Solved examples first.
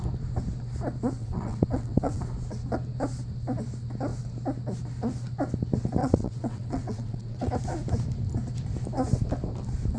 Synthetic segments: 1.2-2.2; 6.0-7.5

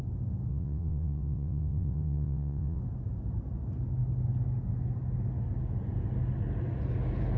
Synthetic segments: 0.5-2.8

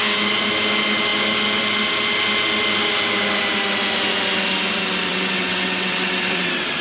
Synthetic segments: 5.1-6.8

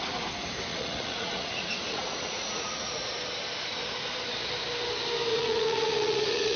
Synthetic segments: 0.7-3.1; 5.3-6.6